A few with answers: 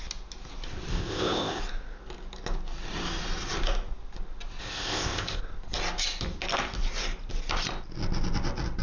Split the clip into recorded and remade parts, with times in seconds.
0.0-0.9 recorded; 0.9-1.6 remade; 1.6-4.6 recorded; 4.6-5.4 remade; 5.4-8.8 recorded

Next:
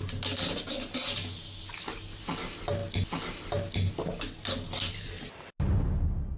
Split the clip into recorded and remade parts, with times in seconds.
0.0-6.4 recorded

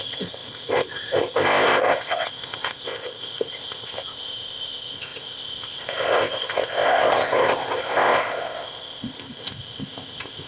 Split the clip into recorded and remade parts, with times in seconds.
0.0-10.5 remade

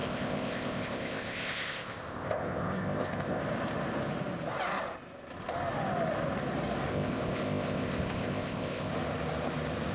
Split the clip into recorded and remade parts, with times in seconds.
0.0-3.4 remade; 3.4-6.9 recorded; 6.9-8.9 remade; 8.9-9.9 recorded